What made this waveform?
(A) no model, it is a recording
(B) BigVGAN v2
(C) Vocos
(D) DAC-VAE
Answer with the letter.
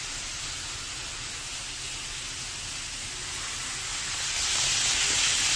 A